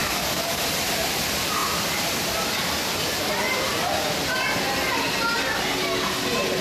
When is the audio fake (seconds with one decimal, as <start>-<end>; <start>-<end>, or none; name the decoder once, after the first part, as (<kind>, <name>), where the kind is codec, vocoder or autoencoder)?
0.0-0.6 (codec, DAC)